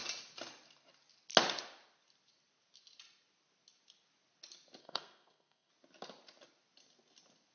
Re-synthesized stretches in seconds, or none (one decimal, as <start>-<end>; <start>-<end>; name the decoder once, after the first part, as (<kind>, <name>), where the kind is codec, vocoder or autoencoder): 4.8-5.7 (codec, SNAC)